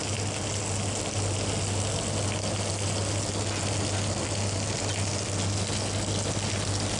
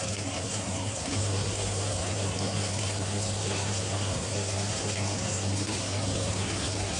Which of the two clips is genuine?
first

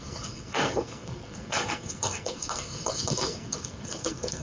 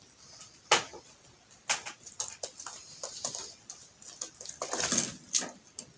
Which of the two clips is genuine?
second